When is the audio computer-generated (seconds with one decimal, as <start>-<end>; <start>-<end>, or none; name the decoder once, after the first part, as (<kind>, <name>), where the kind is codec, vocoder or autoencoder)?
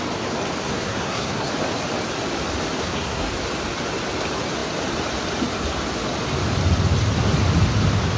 0.6-1.5 (codec, SNAC); 2.8-3.3